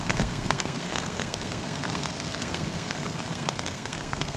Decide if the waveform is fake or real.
fake